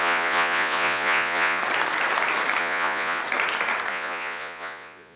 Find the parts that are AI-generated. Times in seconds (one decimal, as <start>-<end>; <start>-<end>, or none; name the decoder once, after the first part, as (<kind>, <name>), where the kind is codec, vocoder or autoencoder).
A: 0.0-1.6 (vocoder, Vocos); 2.6-3.2; 3.9-5.2